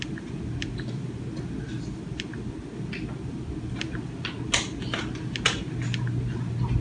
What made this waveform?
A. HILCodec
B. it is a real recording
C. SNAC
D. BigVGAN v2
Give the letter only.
B